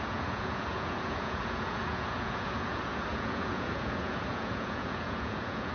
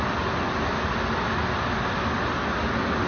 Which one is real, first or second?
second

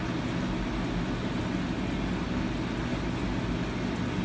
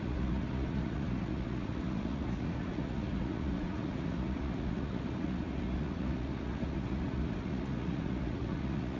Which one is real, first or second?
first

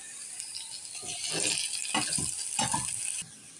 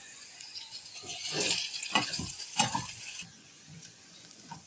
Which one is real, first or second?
first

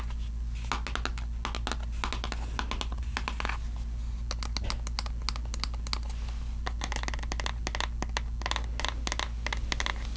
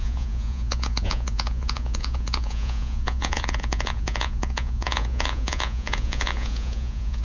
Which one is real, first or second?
first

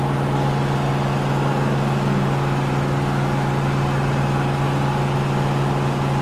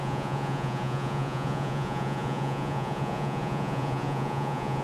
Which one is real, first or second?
first